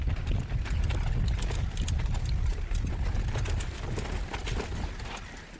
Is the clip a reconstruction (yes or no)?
no